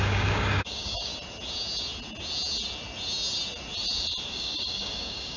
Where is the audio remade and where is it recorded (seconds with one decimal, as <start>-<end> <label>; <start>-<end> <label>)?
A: 0.0-1.1 remade; 1.1-4.3 recorded; 4.3-5.4 remade